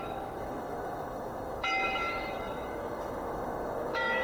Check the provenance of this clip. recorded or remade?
remade